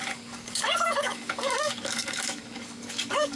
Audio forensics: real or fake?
fake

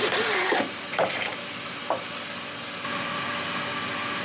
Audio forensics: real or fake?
real